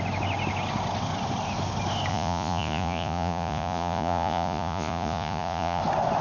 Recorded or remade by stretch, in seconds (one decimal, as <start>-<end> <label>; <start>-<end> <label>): 0.0-2.1 recorded; 2.1-5.8 remade; 5.8-6.2 recorded